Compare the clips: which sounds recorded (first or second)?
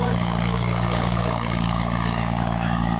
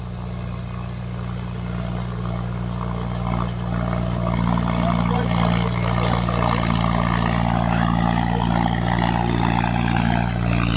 second